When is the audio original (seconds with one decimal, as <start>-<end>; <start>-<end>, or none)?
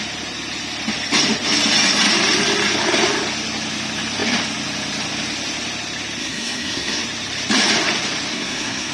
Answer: 0.0-6.2; 7.0-8.3